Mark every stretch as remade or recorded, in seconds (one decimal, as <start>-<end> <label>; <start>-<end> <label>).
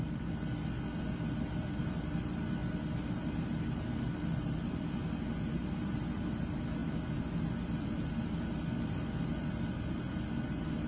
0.0-10.9 recorded